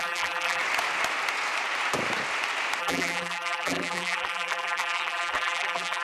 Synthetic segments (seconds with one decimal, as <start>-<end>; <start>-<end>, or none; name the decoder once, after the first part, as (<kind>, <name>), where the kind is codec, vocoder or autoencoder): 0.0-0.6 (vocoder, BigVGAN v2); 2.8-6.0